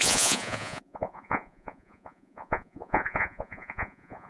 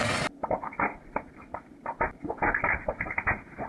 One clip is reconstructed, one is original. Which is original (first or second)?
second